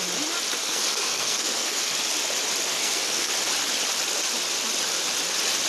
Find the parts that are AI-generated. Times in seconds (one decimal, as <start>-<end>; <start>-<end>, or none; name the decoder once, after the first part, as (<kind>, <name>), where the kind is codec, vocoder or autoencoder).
0.6-1.9 (codec, SNAC); 2.7-3.3

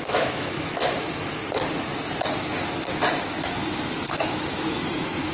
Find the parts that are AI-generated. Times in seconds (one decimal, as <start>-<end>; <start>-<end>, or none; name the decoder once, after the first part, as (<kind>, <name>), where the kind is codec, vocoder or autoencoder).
0.0-1.4 (autoencoder, DAC-VAE); 3.1-5.3

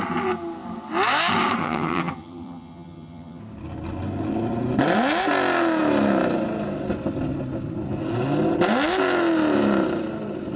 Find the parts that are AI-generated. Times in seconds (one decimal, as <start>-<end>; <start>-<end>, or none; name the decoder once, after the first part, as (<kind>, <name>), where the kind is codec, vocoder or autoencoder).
1.6-3.4 (vocoder, HiFi-GAN)

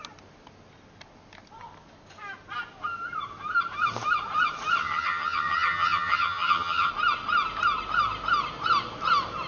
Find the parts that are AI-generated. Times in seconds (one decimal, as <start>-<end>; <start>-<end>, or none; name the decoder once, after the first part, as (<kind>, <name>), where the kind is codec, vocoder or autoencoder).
4.8-6.9 (vocoder, HiFi-GAN)

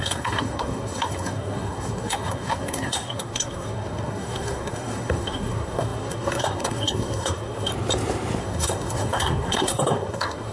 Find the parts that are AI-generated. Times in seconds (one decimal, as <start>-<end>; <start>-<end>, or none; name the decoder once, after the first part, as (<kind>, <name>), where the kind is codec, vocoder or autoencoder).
0.0-7.7 (codec, SNAC); 8.4-10.5